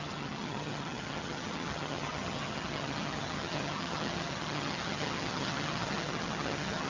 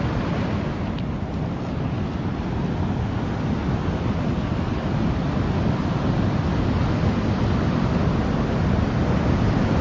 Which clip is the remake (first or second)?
first